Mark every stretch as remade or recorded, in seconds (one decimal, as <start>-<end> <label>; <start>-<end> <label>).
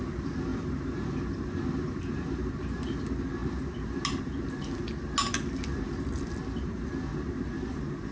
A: 0.0-8.1 recorded